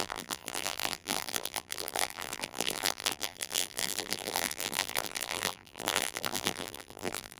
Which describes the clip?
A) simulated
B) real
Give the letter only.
A